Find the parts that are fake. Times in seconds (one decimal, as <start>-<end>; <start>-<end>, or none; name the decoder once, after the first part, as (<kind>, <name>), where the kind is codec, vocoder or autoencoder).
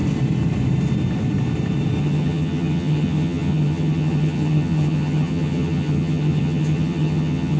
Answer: 2.0-7.6 (vocoder, HiFi-GAN)